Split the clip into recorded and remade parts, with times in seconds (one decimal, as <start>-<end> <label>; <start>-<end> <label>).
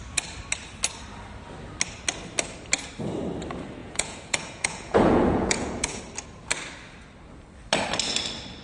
0.0-3.8 recorded; 3.8-6.0 remade; 6.0-8.6 recorded